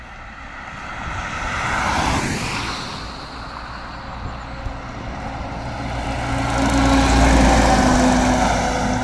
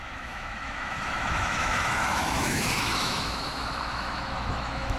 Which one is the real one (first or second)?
first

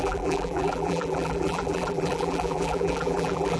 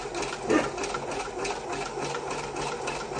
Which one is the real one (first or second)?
second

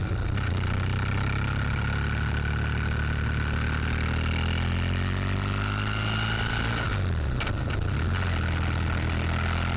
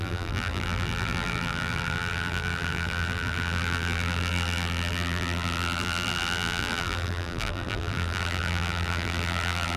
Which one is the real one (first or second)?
first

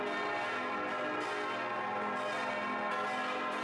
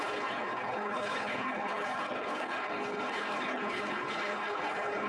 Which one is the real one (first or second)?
first